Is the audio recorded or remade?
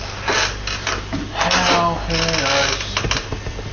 recorded